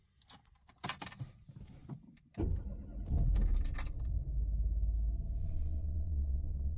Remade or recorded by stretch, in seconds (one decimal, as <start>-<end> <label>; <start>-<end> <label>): 0.0-5.4 recorded; 5.4-6.8 remade